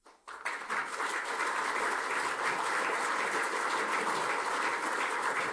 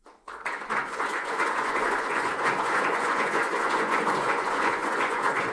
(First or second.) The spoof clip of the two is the second